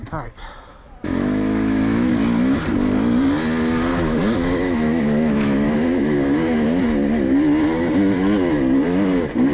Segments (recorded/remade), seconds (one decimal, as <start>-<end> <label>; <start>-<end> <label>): 0.0-0.7 recorded; 0.7-2.1 remade; 2.1-3.9 recorded; 3.9-6.8 remade; 6.8-9.5 recorded